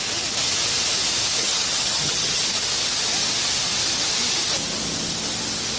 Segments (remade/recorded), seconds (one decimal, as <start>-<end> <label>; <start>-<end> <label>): 0.0-1.4 recorded; 1.4-2.4 remade; 2.4-5.8 recorded